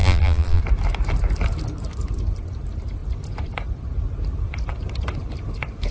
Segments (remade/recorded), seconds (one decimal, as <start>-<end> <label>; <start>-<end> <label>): 0.0-0.6 remade; 0.6-5.9 recorded